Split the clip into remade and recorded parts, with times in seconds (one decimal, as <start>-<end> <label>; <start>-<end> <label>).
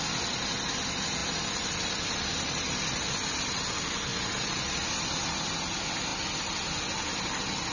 0.0-1.2 recorded; 1.2-2.2 remade; 2.2-4.1 recorded; 4.1-4.7 remade; 4.7-7.7 recorded